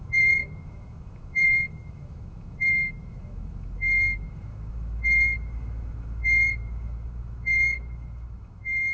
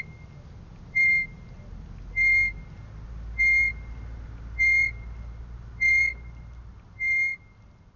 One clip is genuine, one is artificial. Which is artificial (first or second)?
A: first